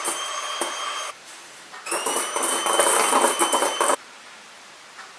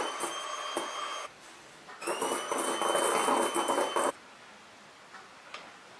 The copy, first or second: first